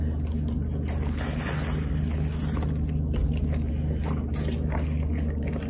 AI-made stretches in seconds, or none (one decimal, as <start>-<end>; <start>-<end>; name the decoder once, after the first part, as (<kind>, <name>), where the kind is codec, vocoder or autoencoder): none